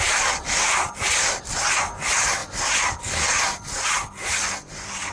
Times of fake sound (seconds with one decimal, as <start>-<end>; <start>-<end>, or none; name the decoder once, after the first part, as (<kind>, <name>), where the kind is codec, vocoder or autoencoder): none